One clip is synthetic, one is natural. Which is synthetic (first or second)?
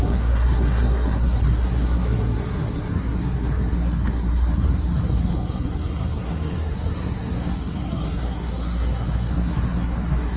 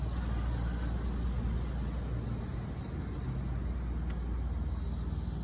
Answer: first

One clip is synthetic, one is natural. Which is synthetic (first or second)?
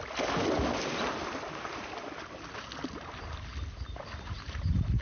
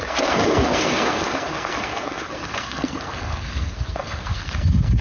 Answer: second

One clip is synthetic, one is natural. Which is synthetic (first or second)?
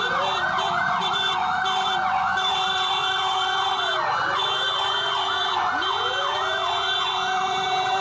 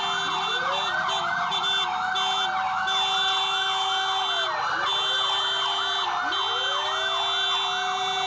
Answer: first